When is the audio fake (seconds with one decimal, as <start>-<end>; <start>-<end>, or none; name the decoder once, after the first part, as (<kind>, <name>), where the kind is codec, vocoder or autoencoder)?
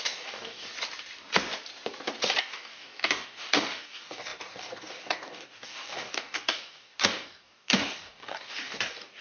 0.0-0.7 (codec, DAC); 2.4-9.2